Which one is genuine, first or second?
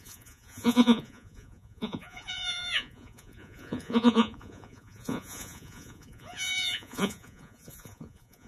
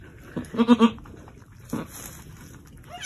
second